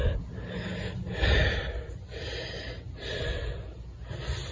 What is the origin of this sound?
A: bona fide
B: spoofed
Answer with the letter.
A